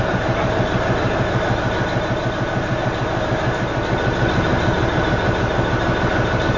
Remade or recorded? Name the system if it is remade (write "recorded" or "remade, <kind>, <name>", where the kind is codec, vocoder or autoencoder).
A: recorded